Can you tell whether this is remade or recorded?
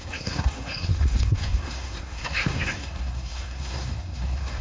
remade